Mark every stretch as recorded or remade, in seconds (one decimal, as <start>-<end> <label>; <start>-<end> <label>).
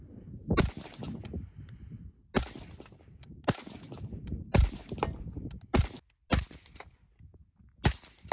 0.0-8.3 recorded